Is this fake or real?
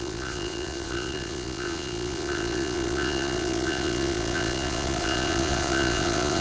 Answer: fake